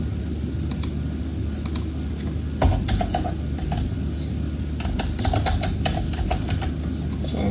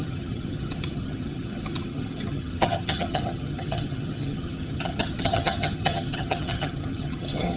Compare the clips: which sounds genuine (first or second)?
first